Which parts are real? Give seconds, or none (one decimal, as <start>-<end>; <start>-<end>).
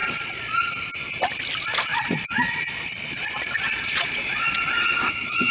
0.7-1.9